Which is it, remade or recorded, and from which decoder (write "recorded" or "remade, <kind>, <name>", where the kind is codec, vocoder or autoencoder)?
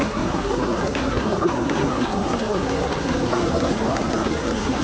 remade, codec, SNAC